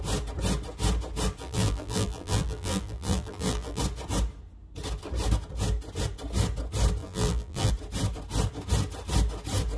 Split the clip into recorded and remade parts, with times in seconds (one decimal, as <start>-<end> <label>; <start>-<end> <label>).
0.0-1.4 recorded; 1.4-3.8 remade; 3.8-7.0 recorded; 7.0-7.7 remade; 7.7-9.8 recorded